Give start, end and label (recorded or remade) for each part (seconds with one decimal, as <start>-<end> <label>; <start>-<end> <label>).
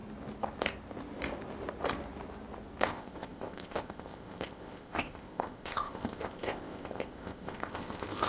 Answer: 0.0-2.8 recorded; 2.8-8.3 remade